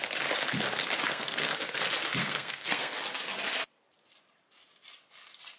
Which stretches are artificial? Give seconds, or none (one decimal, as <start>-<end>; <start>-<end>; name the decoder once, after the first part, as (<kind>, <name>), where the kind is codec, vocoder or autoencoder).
1.1-1.8 (codec, SNAC); 2.2-3.0